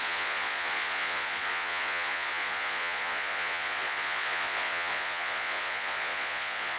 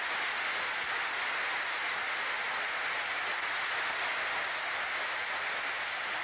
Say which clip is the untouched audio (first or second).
second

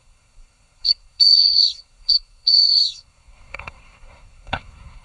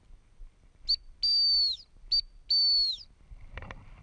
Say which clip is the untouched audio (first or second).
second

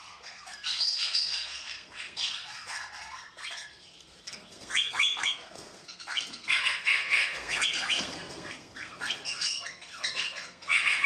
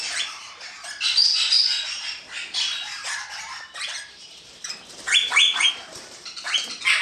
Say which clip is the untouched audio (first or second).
second